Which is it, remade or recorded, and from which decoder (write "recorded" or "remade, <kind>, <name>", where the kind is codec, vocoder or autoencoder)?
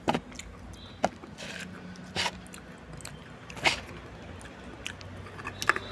recorded